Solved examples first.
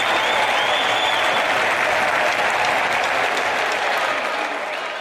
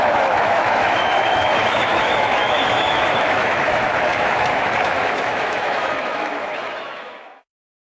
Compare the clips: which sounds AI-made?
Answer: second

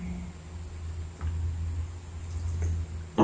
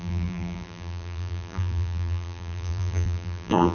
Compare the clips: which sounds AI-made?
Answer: second